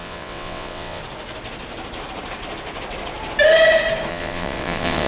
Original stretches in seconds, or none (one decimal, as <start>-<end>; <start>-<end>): 1.0-4.1